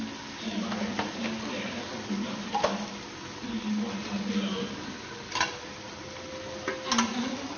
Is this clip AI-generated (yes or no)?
no